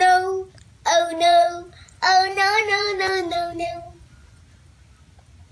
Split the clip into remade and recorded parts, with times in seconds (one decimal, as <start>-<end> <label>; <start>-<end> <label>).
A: 0.0-1.1 recorded; 1.1-4.4 remade; 4.4-5.5 recorded